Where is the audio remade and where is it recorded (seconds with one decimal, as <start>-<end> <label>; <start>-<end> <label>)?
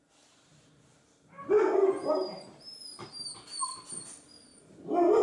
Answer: 0.0-0.5 recorded; 0.5-3.6 remade; 3.6-5.2 recorded